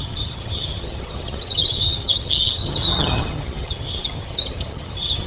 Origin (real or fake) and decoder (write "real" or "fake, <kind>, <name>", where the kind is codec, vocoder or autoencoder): fake, vocoder, HiFi-GAN